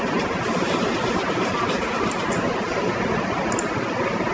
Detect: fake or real fake